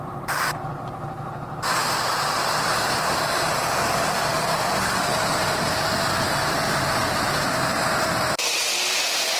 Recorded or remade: remade